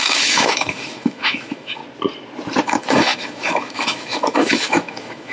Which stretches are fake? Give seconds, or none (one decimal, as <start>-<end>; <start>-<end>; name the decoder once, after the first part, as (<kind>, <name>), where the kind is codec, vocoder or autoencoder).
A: 0.0-1.8 (autoencoder, DAC-VAE); 2.6-5.3